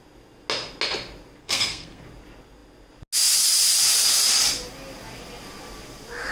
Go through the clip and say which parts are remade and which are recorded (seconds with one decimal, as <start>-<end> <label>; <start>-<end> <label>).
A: 0.0-1.4 recorded; 1.4-2.0 remade; 2.0-6.3 recorded